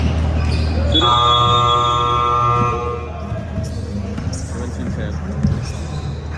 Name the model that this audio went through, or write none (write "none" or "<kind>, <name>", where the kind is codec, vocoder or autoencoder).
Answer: none